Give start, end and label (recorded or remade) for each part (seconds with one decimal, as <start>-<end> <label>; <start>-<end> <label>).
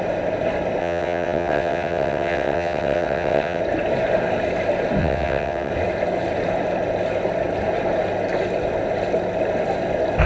0.0-0.8 recorded; 0.8-3.6 remade; 3.6-5.0 recorded; 5.0-5.7 remade; 5.7-10.3 recorded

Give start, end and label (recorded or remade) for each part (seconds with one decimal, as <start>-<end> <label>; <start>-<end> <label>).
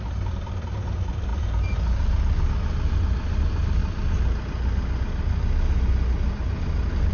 0.0-7.1 recorded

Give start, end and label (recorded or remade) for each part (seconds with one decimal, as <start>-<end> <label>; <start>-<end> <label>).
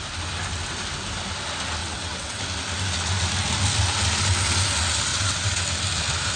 0.0-1.8 recorded; 1.8-2.4 remade; 2.4-5.1 recorded; 5.1-5.6 remade; 5.6-6.4 recorded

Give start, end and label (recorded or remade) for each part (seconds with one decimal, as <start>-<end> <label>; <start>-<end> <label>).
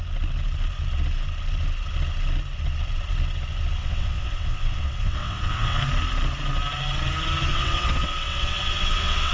0.0-3.8 recorded; 3.8-5.8 remade; 5.8-7.5 recorded; 7.5-9.3 remade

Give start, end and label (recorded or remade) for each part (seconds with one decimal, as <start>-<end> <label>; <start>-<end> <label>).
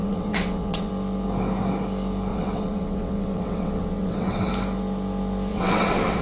0.0-0.9 remade; 0.9-2.3 recorded; 2.3-4.5 remade; 4.5-5.5 recorded; 5.5-6.2 remade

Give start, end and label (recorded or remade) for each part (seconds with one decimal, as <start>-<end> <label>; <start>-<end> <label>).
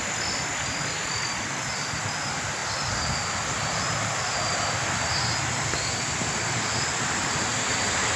0.0-8.2 recorded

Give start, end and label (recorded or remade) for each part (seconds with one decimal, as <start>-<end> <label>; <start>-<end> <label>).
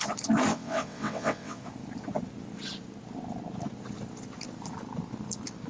0.0-0.5 recorded; 0.5-1.6 remade; 1.6-5.7 recorded